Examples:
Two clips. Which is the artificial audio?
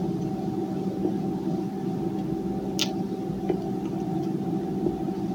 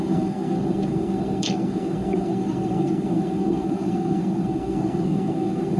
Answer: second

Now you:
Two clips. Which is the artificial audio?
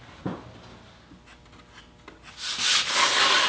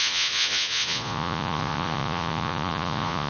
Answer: second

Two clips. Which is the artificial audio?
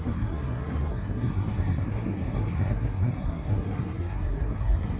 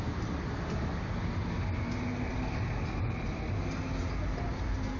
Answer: first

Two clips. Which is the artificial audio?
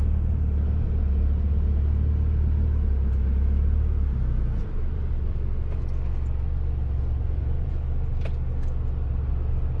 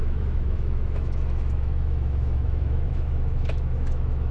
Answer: second